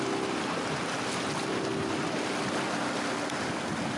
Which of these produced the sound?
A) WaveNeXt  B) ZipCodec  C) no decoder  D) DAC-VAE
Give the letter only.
C